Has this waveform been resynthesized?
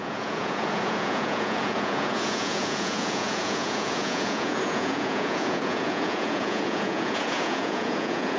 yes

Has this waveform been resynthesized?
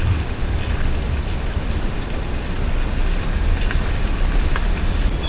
no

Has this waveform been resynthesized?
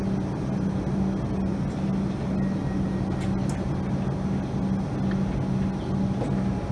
no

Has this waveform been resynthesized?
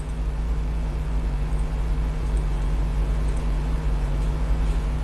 yes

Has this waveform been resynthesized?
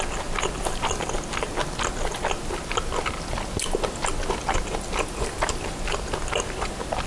no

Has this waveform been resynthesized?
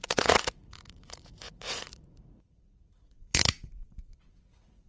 yes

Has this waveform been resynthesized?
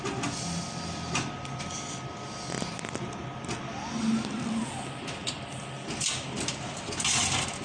no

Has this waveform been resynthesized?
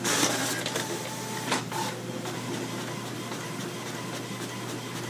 no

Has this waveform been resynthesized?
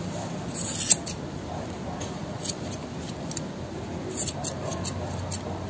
no